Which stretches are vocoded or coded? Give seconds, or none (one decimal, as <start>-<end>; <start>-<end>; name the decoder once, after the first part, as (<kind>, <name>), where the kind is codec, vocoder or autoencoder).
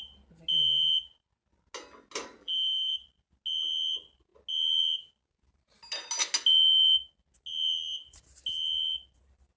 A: 2.4-2.9 (vocoder, BigVGAN v2)